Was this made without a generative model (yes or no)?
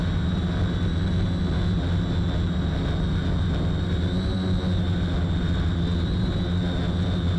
yes